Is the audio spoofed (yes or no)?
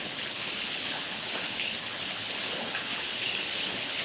yes